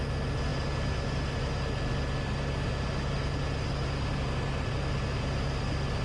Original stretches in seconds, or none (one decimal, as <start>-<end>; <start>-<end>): 0.0-6.0